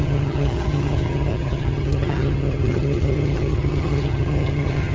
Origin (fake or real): fake